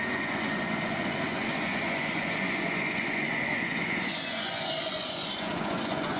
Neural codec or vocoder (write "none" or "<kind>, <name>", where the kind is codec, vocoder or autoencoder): vocoder, Vocos